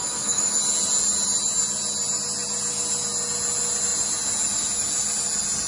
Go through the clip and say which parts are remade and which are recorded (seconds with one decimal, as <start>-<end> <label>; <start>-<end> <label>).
0.0-0.6 remade; 0.6-5.7 recorded